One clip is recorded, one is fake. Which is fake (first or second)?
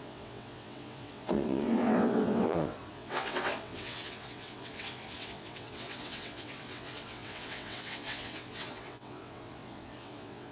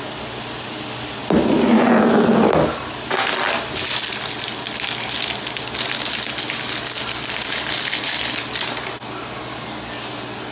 first